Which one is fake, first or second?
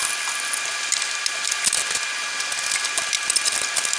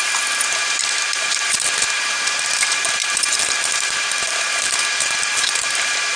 second